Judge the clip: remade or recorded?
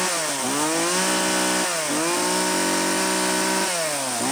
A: recorded